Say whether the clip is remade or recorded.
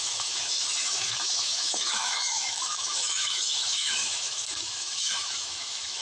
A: remade